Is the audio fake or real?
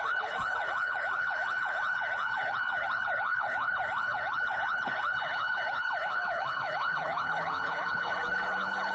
fake